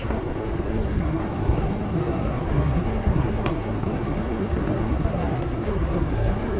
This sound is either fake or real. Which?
fake